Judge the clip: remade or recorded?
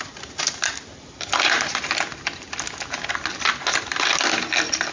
recorded